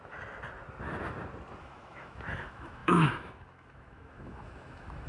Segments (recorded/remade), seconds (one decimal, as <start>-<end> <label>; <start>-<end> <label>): 0.0-1.6 recorded; 1.6-5.1 remade